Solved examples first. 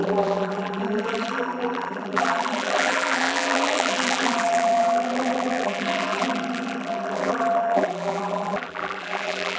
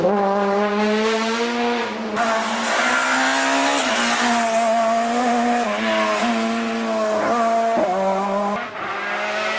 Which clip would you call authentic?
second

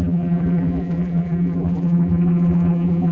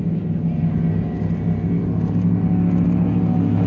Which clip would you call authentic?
second